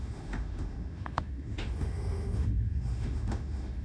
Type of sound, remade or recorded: remade